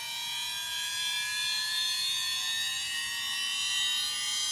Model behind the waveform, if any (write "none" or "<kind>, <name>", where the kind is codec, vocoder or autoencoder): vocoder, Vocos